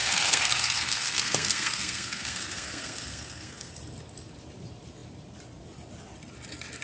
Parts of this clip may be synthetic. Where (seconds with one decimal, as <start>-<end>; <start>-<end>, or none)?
0.0-3.7